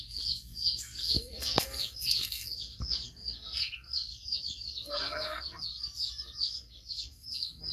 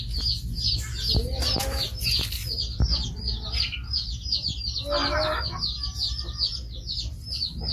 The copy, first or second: first